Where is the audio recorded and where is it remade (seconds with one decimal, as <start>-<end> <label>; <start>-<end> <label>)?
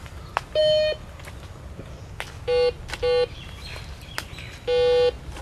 0.0-5.4 recorded